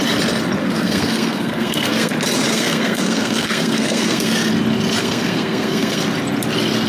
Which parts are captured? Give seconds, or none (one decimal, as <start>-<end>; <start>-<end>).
0.0-0.6; 2.1-2.5; 4.5-5.0; 6.0-6.9